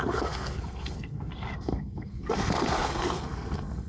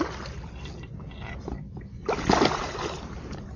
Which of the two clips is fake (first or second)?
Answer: first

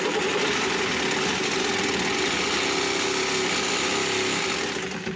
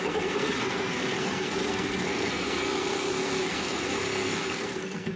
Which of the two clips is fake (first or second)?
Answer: second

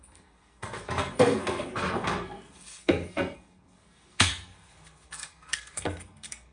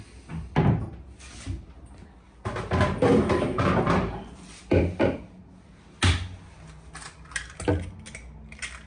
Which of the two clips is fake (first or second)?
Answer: first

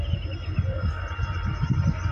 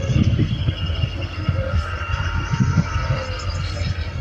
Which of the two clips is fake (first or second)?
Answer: second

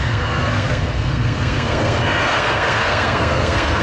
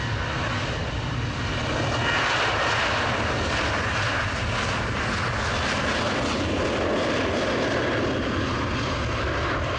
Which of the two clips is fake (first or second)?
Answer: first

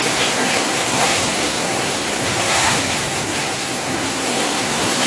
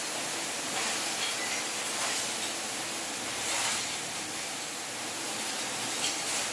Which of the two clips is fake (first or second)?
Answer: first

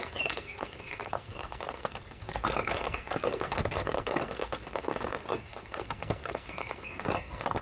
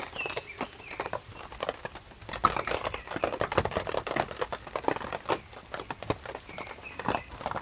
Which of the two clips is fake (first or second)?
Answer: first